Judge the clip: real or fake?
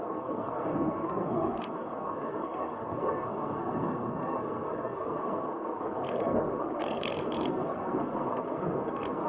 fake